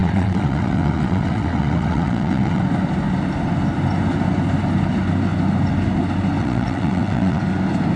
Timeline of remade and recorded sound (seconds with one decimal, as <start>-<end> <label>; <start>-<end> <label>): 0.0-2.6 remade; 2.6-6.4 recorded; 6.4-7.4 remade; 7.4-8.0 recorded